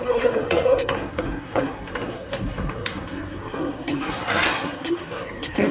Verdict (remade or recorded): remade